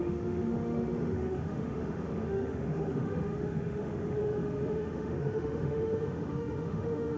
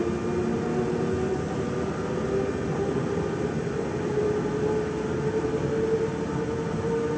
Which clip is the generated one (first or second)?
first